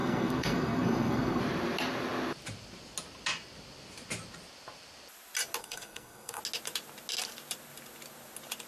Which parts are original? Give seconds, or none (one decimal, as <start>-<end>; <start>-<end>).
1.4-5.6; 6.4-8.7